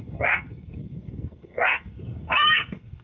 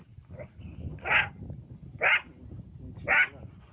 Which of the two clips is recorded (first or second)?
second